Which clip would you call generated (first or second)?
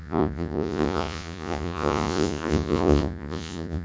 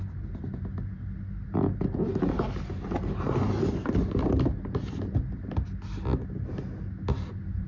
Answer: first